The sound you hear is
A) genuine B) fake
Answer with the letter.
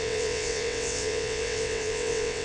B